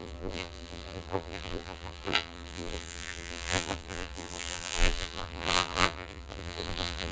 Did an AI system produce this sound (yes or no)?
yes